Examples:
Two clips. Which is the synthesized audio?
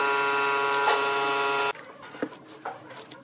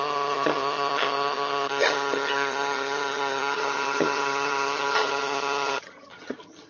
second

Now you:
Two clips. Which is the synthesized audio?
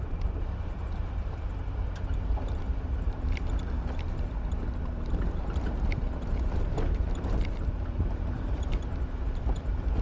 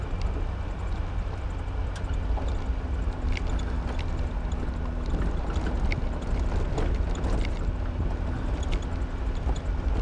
first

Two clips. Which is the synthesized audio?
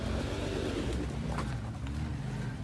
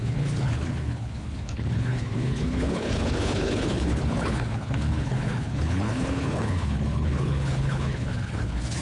second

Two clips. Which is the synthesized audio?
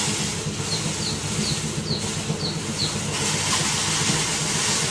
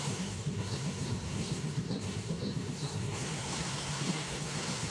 second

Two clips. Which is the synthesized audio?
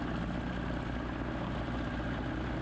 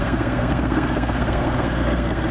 second